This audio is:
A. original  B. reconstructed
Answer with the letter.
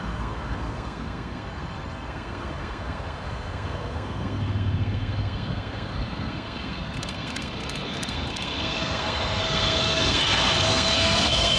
B